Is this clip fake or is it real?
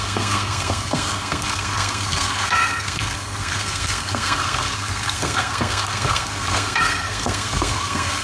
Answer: fake